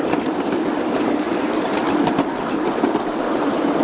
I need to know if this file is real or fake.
real